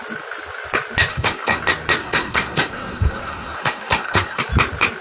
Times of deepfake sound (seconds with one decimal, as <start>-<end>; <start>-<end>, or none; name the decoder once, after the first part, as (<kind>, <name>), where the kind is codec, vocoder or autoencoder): 1.1-1.6 (codec, SNAC); 2.0-4.4